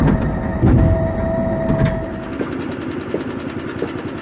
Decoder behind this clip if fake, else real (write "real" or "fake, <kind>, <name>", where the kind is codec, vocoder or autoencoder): real